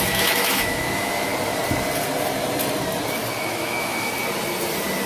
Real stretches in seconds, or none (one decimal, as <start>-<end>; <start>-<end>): 1.3-3.4; 4.1-5.1